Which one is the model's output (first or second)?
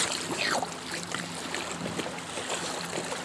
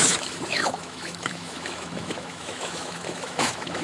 second